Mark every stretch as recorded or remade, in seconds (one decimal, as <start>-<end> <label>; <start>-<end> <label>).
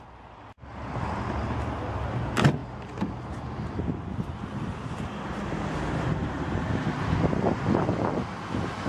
0.0-8.9 recorded